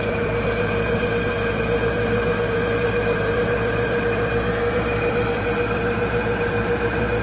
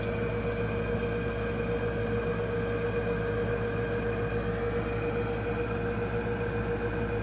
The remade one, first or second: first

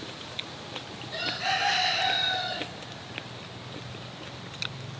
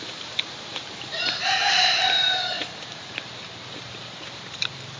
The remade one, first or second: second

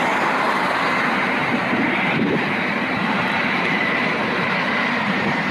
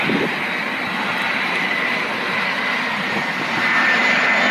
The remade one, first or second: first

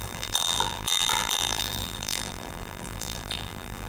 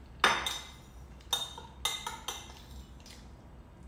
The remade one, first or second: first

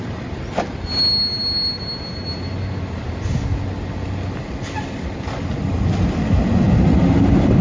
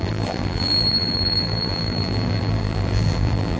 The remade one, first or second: second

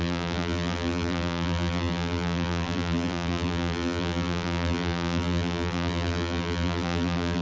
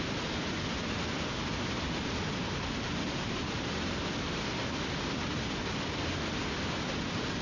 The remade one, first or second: first